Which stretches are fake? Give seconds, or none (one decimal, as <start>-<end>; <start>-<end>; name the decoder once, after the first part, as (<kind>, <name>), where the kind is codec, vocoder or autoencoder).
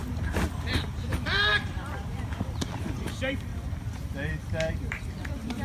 0.7-3.5 (vocoder, BigVGAN v2); 4.7-5.6